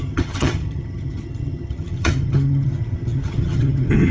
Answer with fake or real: fake